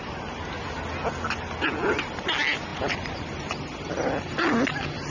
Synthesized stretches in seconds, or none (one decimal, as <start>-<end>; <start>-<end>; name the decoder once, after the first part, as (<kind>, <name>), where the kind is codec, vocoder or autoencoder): none